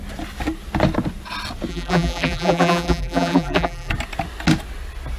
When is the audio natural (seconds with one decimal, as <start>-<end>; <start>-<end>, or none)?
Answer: 0.0-1.7; 3.9-5.2

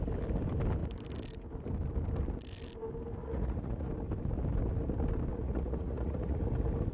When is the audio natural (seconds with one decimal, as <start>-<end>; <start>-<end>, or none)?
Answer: 0.0-3.2; 3.9-5.3; 6.4-6.9